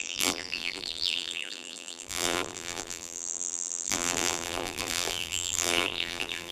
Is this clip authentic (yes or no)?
no